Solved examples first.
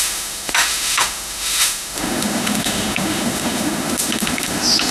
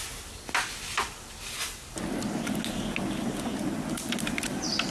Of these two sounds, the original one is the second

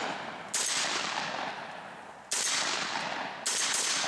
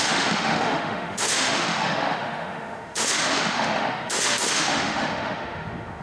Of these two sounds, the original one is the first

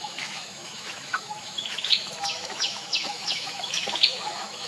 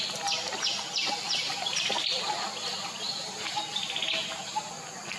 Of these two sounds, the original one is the second